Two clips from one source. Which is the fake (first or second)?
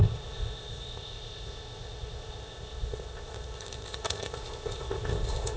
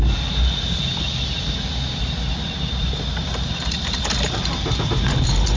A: first